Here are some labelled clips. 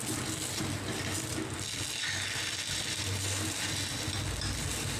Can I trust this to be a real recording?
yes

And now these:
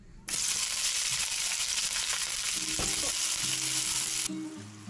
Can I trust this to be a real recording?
yes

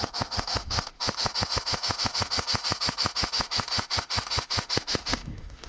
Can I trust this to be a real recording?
no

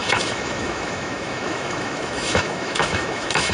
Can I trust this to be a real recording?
no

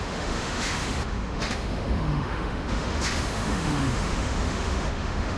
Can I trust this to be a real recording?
no